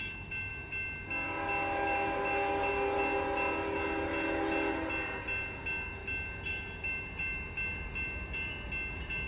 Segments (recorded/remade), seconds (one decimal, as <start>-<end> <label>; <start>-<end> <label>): 0.0-9.3 recorded